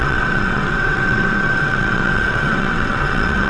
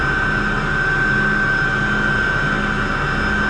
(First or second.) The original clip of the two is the second